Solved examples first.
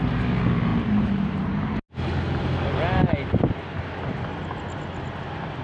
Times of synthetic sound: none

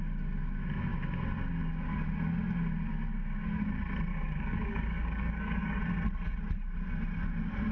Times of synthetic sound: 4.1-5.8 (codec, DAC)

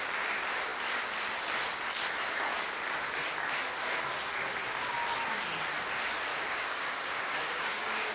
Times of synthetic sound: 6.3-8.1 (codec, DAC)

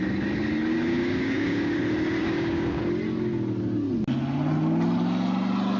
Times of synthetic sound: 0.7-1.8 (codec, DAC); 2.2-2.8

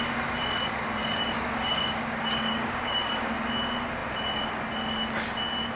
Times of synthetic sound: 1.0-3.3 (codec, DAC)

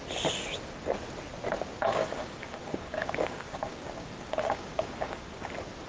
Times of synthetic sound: 2.0-5.5 (codec, DAC)

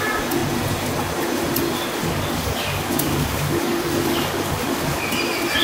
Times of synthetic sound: 2.0-5.0 (codec, DAC)

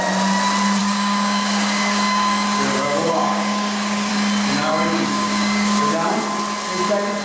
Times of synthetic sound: 0.8-4.1 (codec, DAC); 4.7-6.1